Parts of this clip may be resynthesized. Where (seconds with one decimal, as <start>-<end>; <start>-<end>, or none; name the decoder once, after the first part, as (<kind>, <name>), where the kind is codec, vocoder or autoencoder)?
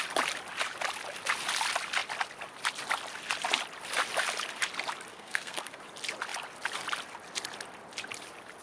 5.1-5.8 (codec, SNAC)